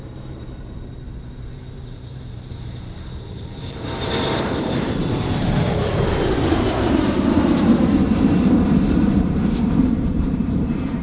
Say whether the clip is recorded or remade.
remade